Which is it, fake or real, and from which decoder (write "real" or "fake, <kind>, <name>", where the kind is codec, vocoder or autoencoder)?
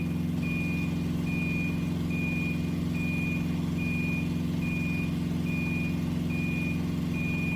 real